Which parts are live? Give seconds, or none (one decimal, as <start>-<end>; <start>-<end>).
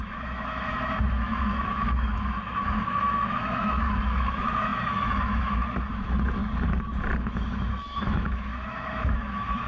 6.4-7.2